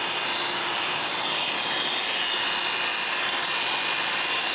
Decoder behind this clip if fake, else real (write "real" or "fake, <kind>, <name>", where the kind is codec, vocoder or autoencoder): real